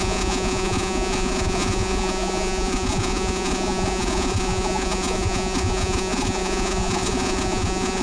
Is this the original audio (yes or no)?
no